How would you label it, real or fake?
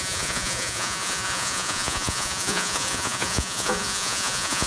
fake